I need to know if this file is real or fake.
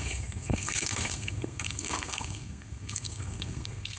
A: fake